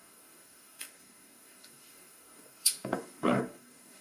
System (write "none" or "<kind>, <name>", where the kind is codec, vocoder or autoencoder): codec, DAC